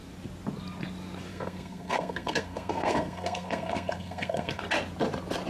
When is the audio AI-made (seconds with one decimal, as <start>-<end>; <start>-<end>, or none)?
1.3-4.6